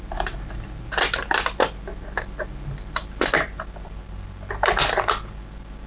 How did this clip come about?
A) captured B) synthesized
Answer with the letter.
A